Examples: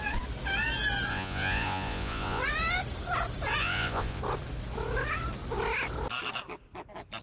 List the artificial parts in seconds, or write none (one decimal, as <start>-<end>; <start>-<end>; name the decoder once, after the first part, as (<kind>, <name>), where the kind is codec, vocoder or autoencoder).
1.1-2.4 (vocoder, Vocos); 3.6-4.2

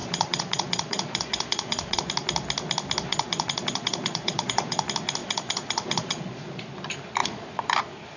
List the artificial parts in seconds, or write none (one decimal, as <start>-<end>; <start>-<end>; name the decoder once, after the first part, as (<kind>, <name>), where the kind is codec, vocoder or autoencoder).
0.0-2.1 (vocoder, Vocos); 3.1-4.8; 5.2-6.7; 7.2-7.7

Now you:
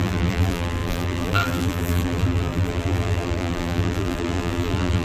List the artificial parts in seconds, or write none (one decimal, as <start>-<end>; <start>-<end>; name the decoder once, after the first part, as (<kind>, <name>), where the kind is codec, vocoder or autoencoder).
0.0-5.0 (vocoder, BigVGAN v2)

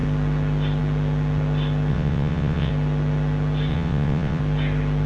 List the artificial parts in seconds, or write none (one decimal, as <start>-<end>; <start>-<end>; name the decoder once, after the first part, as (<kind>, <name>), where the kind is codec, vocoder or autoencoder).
1.9-2.7 (vocoder, WaveNeXt); 3.7-4.4

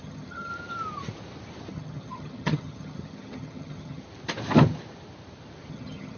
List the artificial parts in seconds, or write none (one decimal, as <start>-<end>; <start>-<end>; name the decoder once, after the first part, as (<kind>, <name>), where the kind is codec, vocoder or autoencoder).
0.0-0.5 (vocoder, HiFi-GAN); 1.7-4.0; 5.7-6.2